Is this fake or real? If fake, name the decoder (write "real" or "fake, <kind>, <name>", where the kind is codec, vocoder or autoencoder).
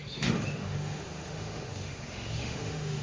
fake, autoencoder, DAC-VAE